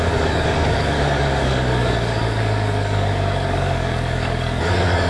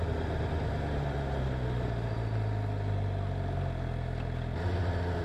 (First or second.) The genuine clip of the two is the second